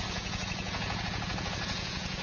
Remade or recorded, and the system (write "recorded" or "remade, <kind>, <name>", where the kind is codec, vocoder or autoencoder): remade, vocoder, Vocos